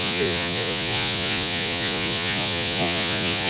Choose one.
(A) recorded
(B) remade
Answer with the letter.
B